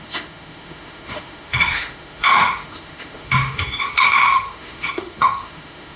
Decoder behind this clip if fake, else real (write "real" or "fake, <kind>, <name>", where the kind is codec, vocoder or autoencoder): fake, autoencoder, DAC-VAE